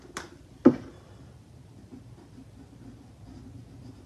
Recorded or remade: recorded